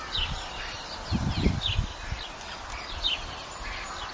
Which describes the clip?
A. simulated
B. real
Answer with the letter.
B